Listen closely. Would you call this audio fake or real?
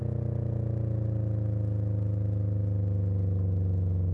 real